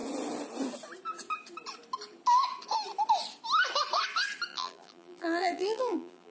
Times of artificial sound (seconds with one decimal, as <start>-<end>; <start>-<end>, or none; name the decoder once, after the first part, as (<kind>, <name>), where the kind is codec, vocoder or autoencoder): 4.5-6.3 (vocoder, BigVGAN v2)